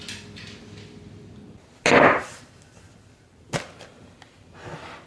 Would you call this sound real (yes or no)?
yes